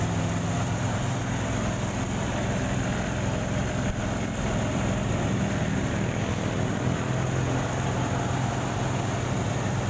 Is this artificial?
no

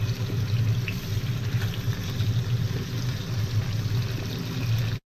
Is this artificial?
no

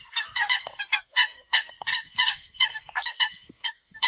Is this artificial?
yes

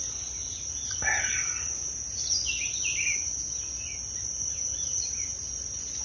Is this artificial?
no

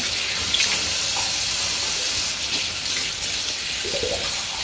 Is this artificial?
no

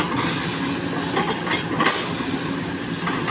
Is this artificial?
no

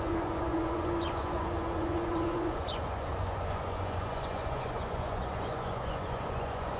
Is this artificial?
yes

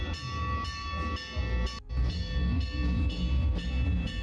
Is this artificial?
no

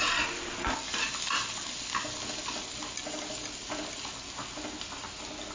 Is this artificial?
no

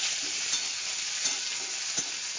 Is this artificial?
no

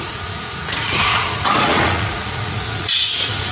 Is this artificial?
yes